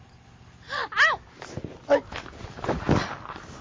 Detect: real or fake real